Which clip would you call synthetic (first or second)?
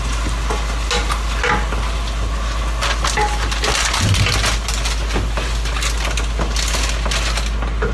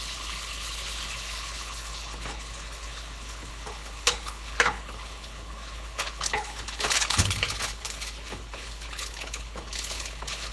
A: second